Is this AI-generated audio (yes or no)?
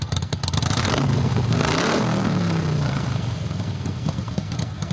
yes